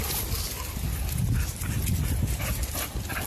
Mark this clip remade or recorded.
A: recorded